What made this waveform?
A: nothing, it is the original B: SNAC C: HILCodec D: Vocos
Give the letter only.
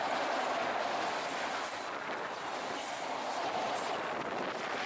A